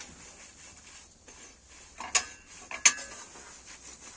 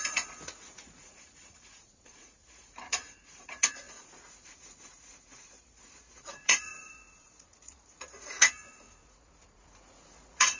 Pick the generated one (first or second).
second